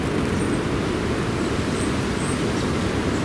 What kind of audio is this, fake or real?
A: real